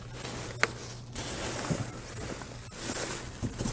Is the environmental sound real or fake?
real